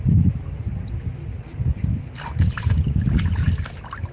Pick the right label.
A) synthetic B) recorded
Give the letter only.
B